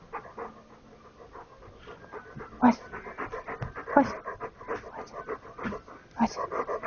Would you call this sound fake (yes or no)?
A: no